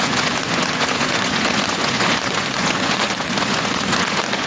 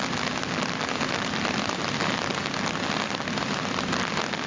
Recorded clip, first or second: second